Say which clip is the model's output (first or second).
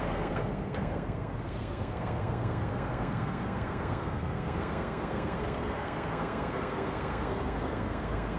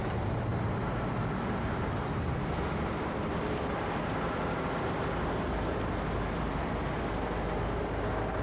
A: first